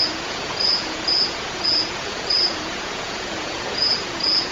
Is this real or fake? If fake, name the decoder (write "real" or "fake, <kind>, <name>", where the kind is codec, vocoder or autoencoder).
fake, vocoder, Vocos